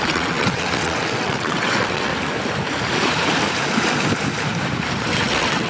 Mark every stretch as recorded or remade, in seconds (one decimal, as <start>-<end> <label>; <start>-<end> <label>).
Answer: 0.0-2.1 remade; 2.1-5.0 recorded; 5.0-5.7 remade